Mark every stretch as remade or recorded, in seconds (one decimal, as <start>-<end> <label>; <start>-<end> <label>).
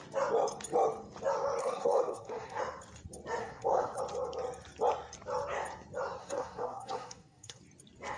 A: 0.0-1.6 recorded; 1.6-2.6 remade; 2.6-3.4 recorded; 3.4-4.0 remade; 4.0-6.2 recorded; 6.2-7.6 remade; 7.6-8.2 recorded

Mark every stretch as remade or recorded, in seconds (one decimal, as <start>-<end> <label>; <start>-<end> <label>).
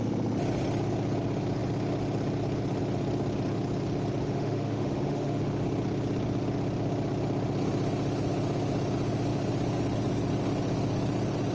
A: 0.0-4.2 recorded; 4.2-5.4 remade; 5.4-11.5 recorded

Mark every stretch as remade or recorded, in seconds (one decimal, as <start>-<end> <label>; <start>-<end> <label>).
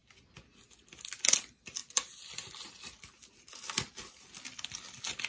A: 0.0-5.3 recorded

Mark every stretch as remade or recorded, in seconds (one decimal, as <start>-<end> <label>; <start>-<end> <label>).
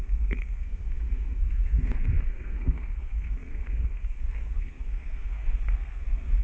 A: 0.0-6.4 remade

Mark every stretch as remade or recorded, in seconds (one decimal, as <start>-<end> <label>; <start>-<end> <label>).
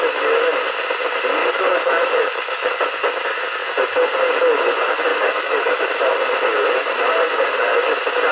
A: 0.0-1.4 recorded; 1.4-2.7 remade; 2.7-5.1 recorded; 5.1-5.8 remade; 5.8-8.3 recorded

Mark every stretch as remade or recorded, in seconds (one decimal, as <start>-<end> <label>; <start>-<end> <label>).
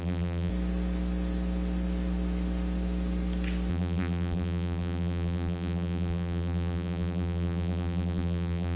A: 0.0-0.5 remade; 0.5-3.7 recorded; 3.7-8.8 remade